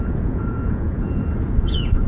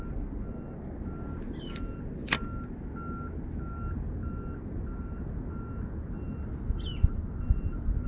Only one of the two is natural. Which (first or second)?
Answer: second